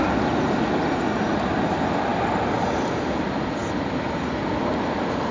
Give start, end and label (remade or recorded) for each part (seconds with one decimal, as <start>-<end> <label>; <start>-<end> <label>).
0.0-5.3 recorded